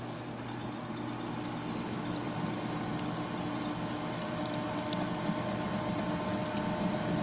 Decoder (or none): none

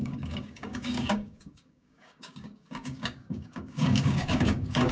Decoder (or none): codec, DAC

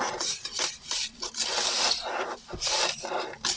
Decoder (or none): none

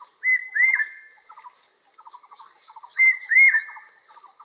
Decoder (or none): codec, DAC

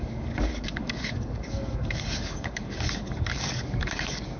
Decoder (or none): codec, DAC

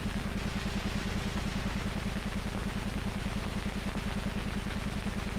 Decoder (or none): none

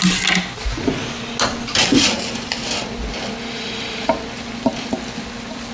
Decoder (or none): none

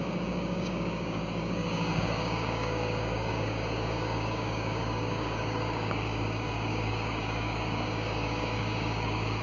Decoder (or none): codec, DAC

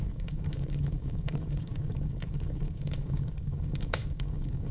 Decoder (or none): codec, DAC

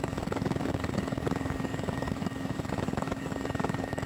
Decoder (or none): codec, DAC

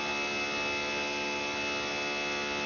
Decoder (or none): none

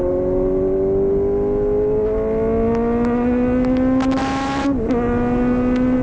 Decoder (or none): none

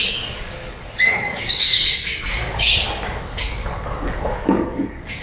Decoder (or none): codec, DAC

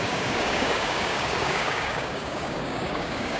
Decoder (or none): codec, DAC